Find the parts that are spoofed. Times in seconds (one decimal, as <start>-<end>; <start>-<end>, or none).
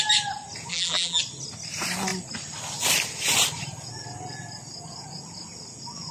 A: 0.7-1.2